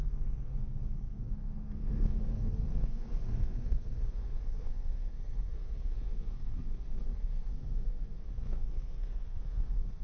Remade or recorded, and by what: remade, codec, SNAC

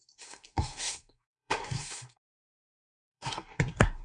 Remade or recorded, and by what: remade, codec, SNAC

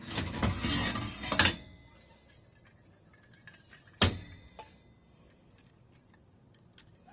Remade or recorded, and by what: recorded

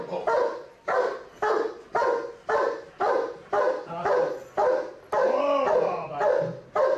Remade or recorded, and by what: recorded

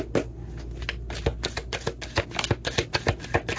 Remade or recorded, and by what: recorded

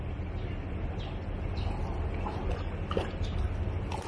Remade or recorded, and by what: recorded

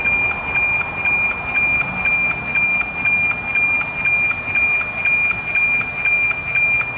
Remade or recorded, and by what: recorded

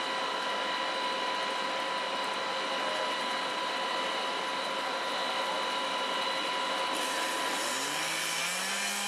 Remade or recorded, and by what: recorded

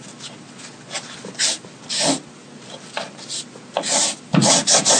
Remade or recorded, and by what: recorded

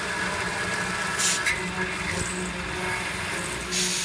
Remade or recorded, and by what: recorded